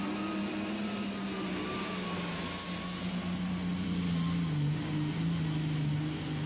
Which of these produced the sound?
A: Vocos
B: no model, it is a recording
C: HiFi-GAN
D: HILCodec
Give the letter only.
B